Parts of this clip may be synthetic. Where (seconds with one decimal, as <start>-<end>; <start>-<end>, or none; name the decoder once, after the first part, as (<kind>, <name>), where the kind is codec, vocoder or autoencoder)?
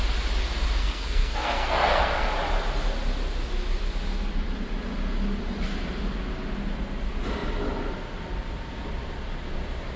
0.8-2.3 (codec, SNAC)